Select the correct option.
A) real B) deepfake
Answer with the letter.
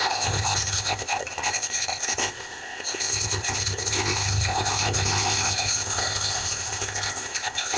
B